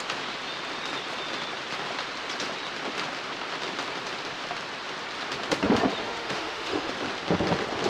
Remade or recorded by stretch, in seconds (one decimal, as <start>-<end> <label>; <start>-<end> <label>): 0.0-6.0 recorded; 6.0-6.9 remade; 6.9-7.9 recorded